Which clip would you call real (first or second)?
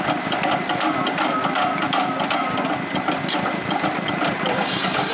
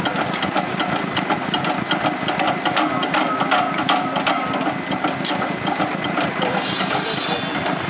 second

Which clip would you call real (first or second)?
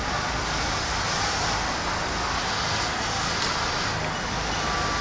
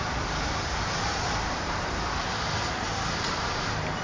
first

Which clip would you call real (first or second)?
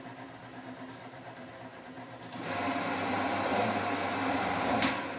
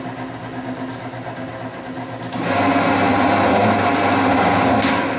second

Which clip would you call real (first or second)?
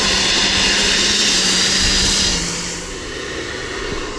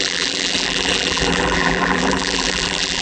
first